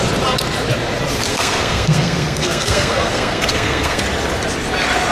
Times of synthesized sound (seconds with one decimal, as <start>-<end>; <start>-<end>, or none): 1.3-4.0